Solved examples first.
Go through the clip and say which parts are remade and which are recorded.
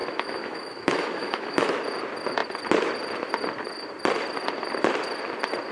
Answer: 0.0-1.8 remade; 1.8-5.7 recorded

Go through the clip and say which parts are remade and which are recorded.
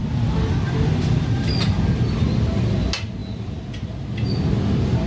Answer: 0.0-5.1 recorded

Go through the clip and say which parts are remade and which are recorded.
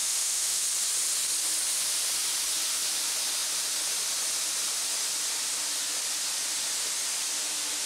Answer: 0.0-0.6 remade; 0.6-7.9 recorded